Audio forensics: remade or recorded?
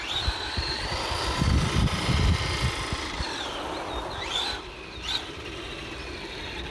recorded